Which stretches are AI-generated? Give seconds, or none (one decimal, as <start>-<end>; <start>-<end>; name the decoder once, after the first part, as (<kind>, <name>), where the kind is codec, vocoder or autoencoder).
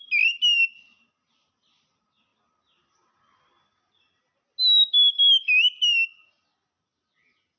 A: none